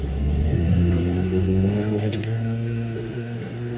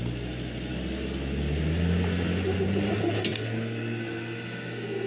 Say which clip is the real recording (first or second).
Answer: second